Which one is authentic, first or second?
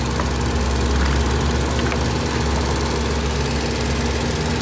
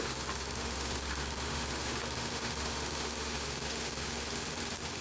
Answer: first